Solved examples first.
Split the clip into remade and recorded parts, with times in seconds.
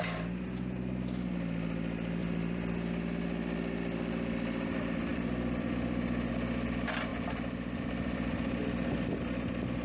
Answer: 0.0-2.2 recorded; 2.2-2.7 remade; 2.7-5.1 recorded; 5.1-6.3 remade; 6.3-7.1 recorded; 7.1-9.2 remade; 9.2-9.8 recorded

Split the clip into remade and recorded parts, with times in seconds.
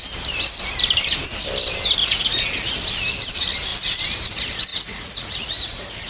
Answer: 0.0-2.0 recorded; 2.0-2.7 remade; 2.7-4.7 recorded; 4.7-6.1 remade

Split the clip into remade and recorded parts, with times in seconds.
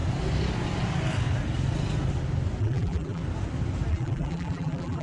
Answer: 0.0-2.6 recorded; 2.6-3.2 remade; 3.2-3.9 recorded; 3.9-5.0 remade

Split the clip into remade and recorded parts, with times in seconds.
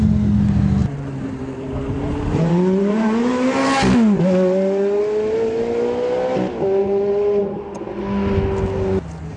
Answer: 0.0-0.8 recorded; 0.8-3.3 remade; 3.3-6.8 recorded; 6.8-7.4 remade; 7.4-9.4 recorded